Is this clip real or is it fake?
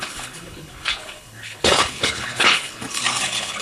fake